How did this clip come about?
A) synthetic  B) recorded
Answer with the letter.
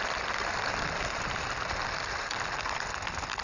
B